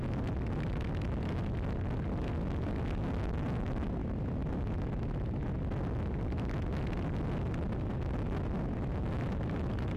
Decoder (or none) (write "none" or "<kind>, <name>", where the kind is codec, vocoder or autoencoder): none